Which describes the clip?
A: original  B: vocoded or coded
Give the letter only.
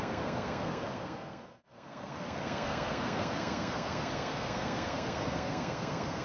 B